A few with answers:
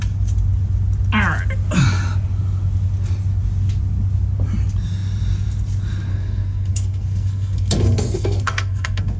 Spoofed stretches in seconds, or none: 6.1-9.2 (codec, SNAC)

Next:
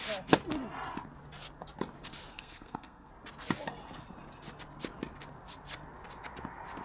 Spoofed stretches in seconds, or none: 2.3-3.1 (codec, SNAC)